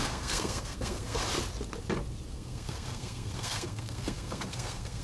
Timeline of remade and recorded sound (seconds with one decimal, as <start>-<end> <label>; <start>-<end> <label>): 0.0-1.2 remade; 1.2-2.3 recorded; 2.3-5.0 remade